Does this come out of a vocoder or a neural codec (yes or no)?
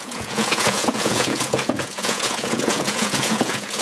yes